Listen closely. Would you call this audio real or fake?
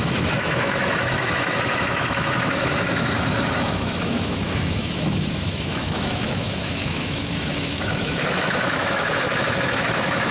fake